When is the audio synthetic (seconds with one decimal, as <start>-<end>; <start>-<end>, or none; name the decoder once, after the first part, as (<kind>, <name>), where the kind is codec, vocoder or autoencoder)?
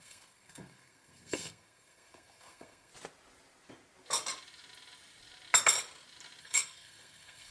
0.0-2.9 (codec, SNAC); 6.4-7.5